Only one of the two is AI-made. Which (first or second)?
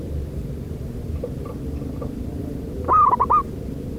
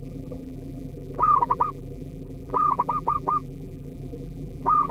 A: second